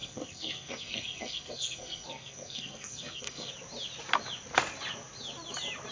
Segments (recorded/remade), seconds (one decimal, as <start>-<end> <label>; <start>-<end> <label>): 0.0-3.5 remade; 3.5-5.9 recorded